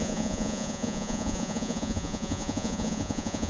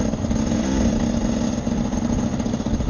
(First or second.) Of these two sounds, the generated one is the first